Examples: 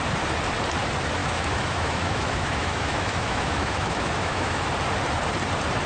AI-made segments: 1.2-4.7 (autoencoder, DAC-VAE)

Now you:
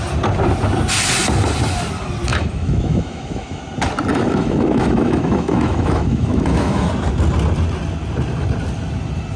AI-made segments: 2.3-3.6 (autoencoder, DAC-VAE); 4.1-6.9